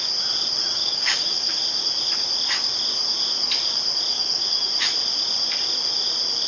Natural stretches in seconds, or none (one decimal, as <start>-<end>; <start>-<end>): 0.0-0.6; 1.5-4.1; 4.7-6.5